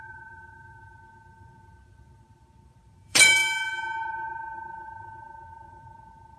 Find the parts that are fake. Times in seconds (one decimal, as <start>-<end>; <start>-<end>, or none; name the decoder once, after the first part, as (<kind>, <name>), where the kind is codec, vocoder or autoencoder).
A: 0.0-3.4 (vocoder, BigVGAN v2); 4.0-6.4